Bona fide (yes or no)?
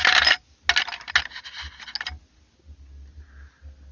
yes